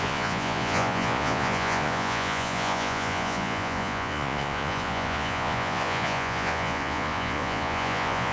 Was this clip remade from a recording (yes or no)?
yes